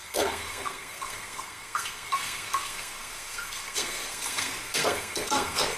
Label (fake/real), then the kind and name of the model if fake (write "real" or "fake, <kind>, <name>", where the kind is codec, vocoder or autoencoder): fake, codec, SNAC